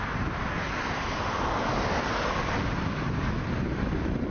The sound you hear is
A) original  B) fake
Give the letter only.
A